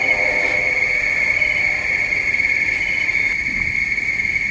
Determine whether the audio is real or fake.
real